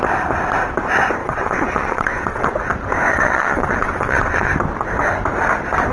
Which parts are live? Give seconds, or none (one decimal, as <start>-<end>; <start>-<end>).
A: 0.0-1.2; 2.5-3.1; 4.5-5.9